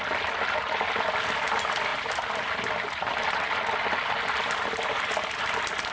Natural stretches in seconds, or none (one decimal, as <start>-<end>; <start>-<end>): 0.0-5.9